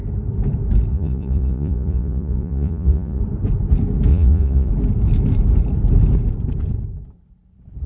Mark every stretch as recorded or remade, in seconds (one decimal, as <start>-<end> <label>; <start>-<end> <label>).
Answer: 0.0-0.9 recorded; 0.9-3.2 remade; 3.2-4.1 recorded; 4.1-4.7 remade; 4.7-7.9 recorded